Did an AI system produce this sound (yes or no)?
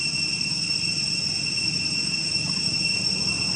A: no